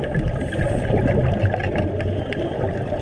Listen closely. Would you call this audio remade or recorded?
recorded